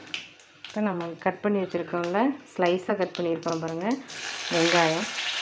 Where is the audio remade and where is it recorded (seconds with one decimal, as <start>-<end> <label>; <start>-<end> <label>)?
0.0-0.7 recorded; 0.7-1.9 remade; 1.9-2.9 recorded; 2.9-3.5 remade; 3.5-5.0 recorded; 5.0-5.4 remade

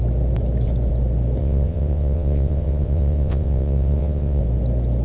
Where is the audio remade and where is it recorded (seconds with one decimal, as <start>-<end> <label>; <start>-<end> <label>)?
0.0-1.4 recorded; 1.4-4.4 remade; 4.4-5.0 recorded

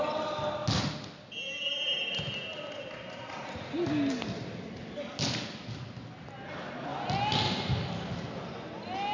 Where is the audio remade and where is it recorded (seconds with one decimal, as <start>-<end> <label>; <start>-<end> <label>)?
0.0-9.1 recorded

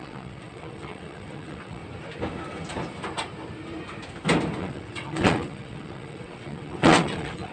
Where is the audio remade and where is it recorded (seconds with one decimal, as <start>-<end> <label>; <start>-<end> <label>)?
0.0-1.8 remade; 1.8-4.6 recorded; 4.6-7.5 remade

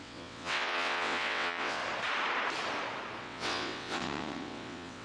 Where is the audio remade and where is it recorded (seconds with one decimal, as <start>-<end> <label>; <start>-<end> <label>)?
0.0-1.8 remade; 1.8-3.2 recorded; 3.2-5.0 remade

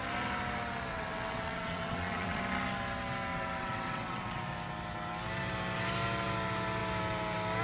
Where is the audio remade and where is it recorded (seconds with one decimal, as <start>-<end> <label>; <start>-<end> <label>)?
0.0-0.9 recorded; 0.9-2.4 remade; 2.4-3.3 recorded; 3.3-4.4 remade; 4.4-7.6 recorded

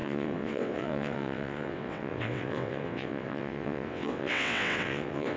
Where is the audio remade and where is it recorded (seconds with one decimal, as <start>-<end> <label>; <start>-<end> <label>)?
0.0-5.4 remade

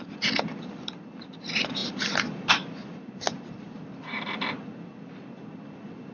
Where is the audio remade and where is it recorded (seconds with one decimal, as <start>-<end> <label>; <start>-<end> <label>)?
0.0-6.1 recorded